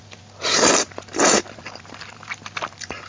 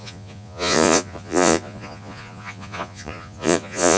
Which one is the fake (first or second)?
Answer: second